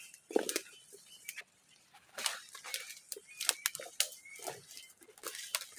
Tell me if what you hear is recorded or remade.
recorded